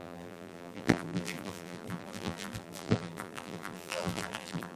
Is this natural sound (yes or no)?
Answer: no